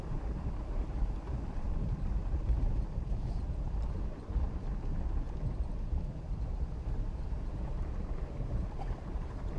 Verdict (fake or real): fake